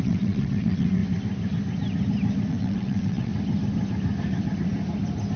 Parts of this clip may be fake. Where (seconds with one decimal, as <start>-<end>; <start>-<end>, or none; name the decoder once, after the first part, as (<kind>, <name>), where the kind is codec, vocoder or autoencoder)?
0.0-1.0 (vocoder, WaveNeXt); 2.5-3.3